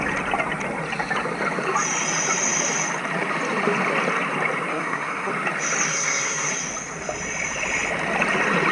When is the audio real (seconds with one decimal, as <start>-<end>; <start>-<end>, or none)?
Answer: 0.0-4.7; 5.3-5.9; 6.5-8.7